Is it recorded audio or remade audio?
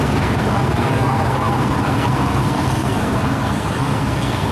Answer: remade